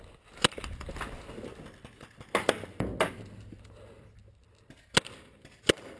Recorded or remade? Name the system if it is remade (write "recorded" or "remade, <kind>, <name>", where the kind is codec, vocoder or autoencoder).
recorded